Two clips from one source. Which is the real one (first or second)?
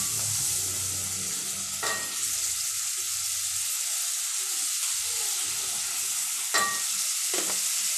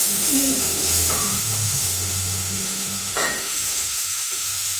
first